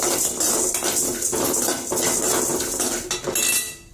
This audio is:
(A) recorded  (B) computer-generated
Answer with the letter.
A